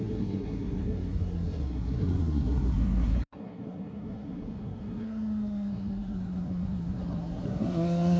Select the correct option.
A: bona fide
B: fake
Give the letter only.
B